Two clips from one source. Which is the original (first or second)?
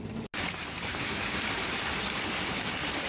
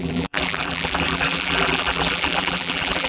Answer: first